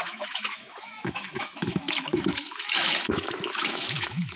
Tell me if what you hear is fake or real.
fake